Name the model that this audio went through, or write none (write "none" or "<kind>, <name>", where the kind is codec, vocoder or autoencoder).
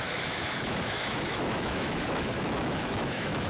autoencoder, DAC-VAE